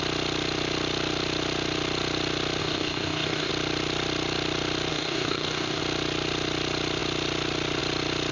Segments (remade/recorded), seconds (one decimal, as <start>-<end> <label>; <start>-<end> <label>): 0.0-2.6 recorded; 2.6-3.5 remade; 3.5-4.9 recorded; 4.9-5.8 remade; 5.8-8.3 recorded